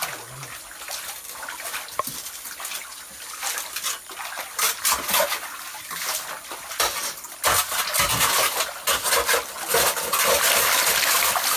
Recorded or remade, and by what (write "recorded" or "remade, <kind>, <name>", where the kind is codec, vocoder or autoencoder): recorded